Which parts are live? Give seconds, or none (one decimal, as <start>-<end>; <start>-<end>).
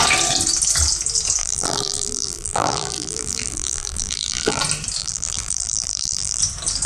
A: 0.0-1.4; 4.6-5.0; 6.4-6.9